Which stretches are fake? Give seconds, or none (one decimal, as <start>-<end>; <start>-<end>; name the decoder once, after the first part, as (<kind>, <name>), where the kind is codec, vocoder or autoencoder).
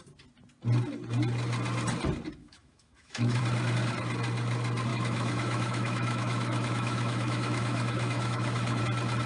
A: 2.4-3.4 (autoencoder, DAC-VAE); 4.9-8.8